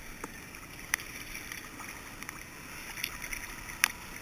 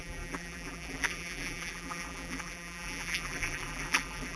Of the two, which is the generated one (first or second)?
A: second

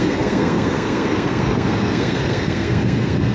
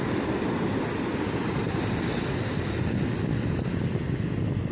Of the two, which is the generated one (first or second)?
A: first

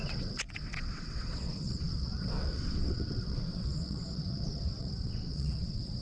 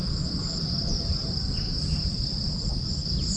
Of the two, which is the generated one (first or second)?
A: first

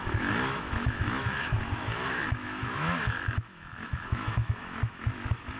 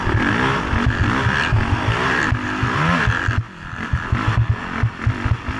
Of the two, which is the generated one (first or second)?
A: first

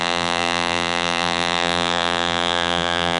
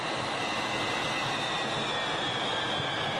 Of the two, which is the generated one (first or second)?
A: first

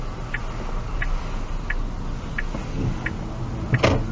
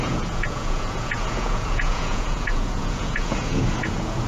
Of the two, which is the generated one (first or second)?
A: second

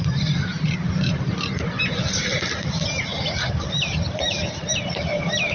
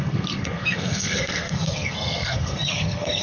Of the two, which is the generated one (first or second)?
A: second